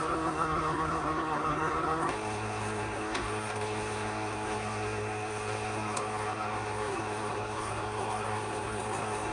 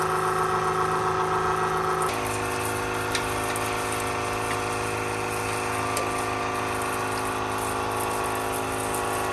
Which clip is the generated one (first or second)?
first